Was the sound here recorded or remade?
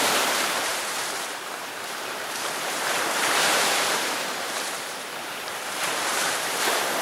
remade